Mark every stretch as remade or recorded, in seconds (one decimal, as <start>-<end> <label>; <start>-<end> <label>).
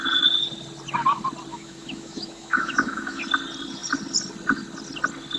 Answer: 0.0-1.5 recorded; 1.5-3.2 remade; 3.2-5.4 recorded